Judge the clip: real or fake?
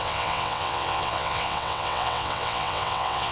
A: fake